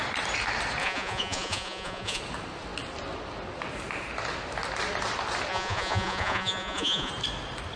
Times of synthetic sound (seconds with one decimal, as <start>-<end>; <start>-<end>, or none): 0.8-2.2; 5.5-7.1